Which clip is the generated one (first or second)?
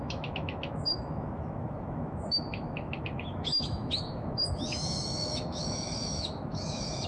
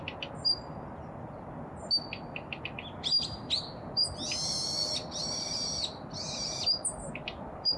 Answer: first